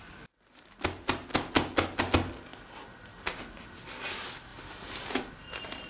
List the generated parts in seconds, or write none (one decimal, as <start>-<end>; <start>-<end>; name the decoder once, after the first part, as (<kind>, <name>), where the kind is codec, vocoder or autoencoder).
none